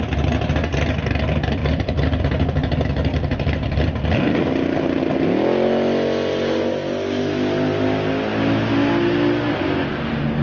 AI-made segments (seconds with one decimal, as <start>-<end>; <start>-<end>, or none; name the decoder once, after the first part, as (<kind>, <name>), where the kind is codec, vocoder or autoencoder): 1.6-2.2 (vocoder, BigVGAN v2); 3.1-3.6